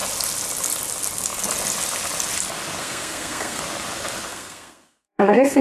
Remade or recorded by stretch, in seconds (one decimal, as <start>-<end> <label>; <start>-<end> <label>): 0.0-2.8 recorded; 2.8-3.6 remade; 3.6-4.3 recorded; 4.3-5.6 remade